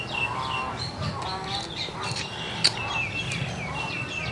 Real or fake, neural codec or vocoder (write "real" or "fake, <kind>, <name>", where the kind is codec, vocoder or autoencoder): real